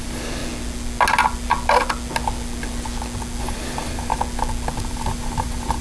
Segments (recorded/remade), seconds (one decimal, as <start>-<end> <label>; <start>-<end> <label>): 0.0-0.4 remade; 0.4-3.4 recorded; 3.4-4.1 remade; 4.1-4.9 recorded; 4.9-5.8 remade